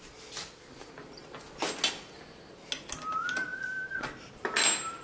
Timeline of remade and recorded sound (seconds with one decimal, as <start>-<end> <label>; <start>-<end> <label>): 0.0-5.0 recorded